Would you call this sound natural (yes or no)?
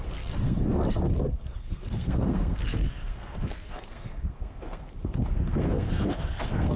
no